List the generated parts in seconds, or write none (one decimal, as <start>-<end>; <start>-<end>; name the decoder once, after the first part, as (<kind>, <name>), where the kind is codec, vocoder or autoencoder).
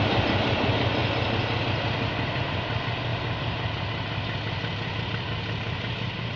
0.0-1.0 (vocoder, BigVGAN v2); 2.2-3.1; 5.0-6.4